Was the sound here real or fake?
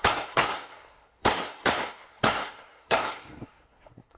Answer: fake